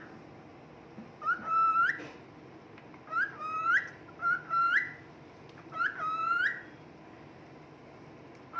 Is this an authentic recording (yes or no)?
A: yes